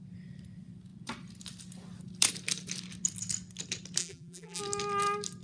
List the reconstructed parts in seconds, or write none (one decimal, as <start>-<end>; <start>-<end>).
4.0-4.6